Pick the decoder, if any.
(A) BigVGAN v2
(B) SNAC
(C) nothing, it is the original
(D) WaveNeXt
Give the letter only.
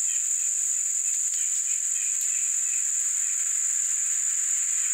C